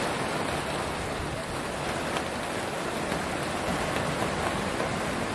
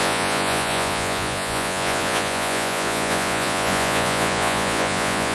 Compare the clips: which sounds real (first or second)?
first